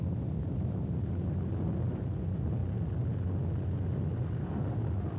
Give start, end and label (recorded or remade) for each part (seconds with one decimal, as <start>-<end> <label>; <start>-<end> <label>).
0.0-5.2 recorded